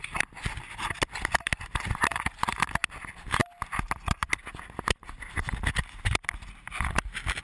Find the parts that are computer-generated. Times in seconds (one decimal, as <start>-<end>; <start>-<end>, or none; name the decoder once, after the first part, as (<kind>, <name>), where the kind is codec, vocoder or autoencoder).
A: none